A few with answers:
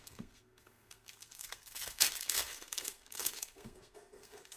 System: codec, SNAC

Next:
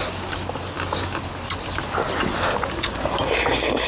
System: none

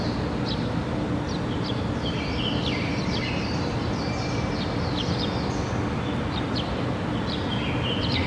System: none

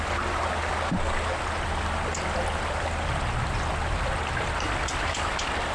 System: none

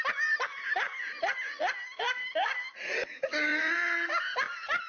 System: none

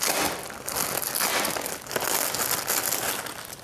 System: none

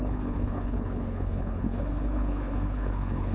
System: codec, HILCodec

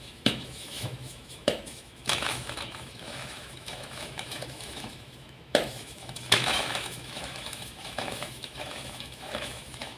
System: autoencoder, DAC-VAE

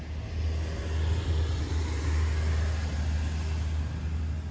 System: none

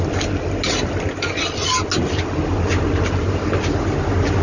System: none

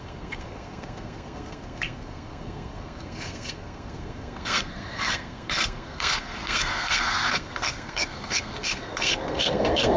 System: codec, SNAC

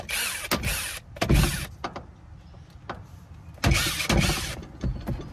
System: none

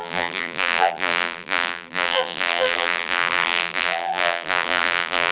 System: vocoder, BigVGAN v2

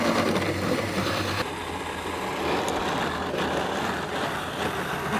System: none